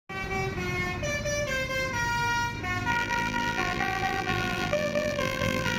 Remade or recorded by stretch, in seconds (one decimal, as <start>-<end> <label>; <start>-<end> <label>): 0.0-2.9 recorded; 2.9-5.8 remade